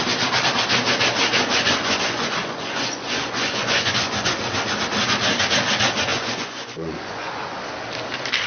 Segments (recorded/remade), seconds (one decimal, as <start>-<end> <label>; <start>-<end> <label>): 0.0-1.3 recorded; 1.3-4.4 remade; 4.4-6.1 recorded; 6.1-7.6 remade; 7.6-8.5 recorded